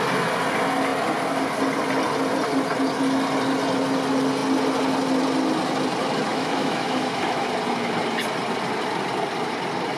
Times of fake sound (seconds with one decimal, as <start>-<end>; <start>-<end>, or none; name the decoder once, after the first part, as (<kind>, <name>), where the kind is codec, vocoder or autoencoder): 6.3-7.5 (autoencoder, DAC-VAE)